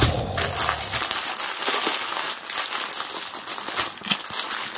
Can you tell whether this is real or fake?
real